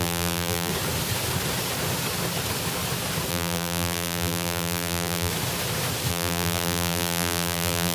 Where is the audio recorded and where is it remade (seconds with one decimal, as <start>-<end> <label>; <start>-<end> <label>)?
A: 0.0-0.7 remade; 0.7-3.3 recorded; 3.3-5.3 remade; 5.3-6.1 recorded; 6.1-7.9 remade